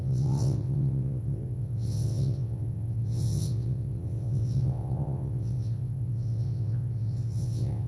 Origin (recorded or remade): remade